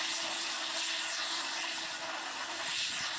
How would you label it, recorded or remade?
recorded